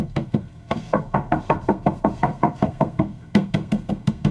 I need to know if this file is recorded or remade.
remade